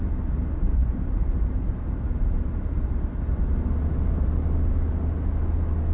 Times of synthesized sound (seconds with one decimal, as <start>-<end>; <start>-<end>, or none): 0.8-3.2